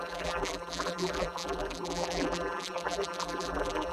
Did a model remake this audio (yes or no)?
yes